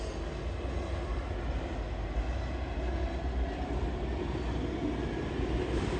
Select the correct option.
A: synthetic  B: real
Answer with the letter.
B